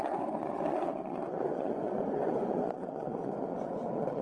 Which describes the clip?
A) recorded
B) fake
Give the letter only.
B